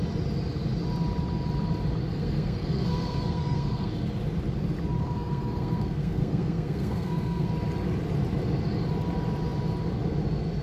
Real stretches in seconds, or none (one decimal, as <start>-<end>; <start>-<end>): 0.0-2.0; 3.9-5.0; 7.5-10.6